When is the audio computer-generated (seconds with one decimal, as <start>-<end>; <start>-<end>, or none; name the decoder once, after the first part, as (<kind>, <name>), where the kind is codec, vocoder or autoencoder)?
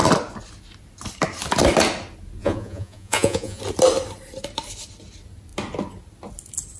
2.4-3.6 (vocoder, Vocos)